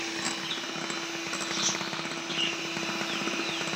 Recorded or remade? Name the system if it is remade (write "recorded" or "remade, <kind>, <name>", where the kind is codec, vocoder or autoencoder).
recorded